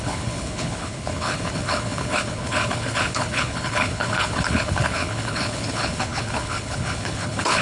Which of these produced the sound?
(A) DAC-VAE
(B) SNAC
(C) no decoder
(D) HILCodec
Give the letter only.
D